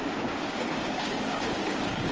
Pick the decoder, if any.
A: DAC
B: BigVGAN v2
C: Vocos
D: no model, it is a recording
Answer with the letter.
A